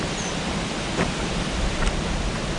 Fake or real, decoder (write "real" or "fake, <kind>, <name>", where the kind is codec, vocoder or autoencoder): real